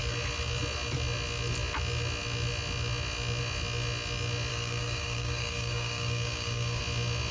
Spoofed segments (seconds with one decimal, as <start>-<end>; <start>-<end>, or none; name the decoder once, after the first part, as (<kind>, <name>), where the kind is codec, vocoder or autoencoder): 4.5-6.8 (codec, DAC)